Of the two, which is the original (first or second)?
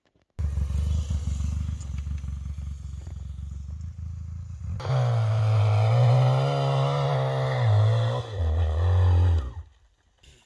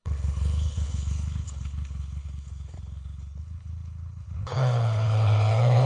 first